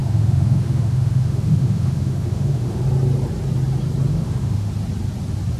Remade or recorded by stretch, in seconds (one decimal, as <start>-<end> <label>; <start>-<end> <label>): 0.0-2.8 remade; 2.8-4.1 recorded; 4.1-4.7 remade; 4.7-5.6 recorded